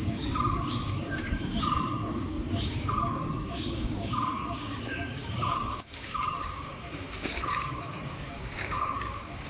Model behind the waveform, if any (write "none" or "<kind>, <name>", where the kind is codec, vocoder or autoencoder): codec, DAC